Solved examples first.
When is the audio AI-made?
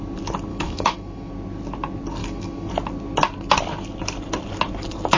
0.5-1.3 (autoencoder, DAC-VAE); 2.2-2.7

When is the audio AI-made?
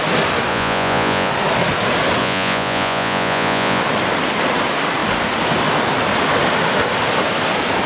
0.5-1.3 (vocoder, Vocos); 2.2-3.8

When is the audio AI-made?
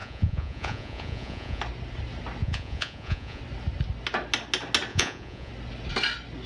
0.0-1.6 (vocoder, Vocos); 2.4-3.4; 4.9-5.5